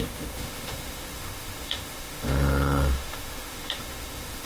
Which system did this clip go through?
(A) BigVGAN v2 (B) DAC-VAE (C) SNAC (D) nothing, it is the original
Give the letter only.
B